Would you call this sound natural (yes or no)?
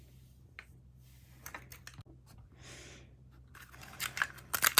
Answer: yes